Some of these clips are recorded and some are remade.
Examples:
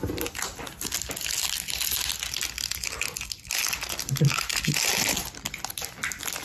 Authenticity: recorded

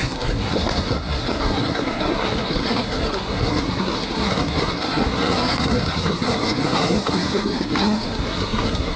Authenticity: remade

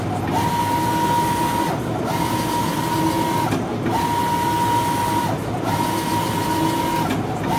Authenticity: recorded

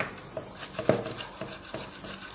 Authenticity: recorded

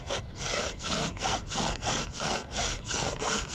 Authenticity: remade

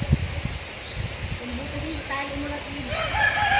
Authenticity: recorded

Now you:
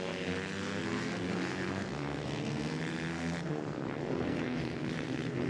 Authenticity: remade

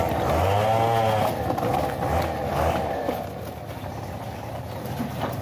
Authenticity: recorded